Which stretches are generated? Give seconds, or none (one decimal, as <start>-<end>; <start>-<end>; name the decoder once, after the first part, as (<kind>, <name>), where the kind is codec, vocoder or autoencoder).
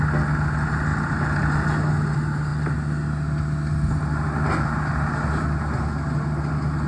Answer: none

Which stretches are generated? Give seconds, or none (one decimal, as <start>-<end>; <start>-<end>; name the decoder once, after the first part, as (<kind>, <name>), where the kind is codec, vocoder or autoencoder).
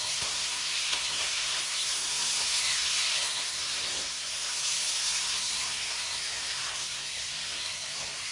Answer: 0.0-8.3 (codec, SNAC)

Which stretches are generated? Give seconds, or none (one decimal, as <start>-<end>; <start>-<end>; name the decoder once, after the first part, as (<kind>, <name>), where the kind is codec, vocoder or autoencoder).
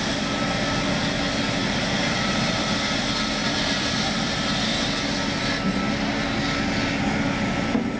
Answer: 1.6-3.0 (vocoder, BigVGAN v2); 3.4-4.6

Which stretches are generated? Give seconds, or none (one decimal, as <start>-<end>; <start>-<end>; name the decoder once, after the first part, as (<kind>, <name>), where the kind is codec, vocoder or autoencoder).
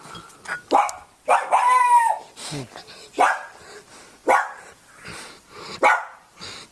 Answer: none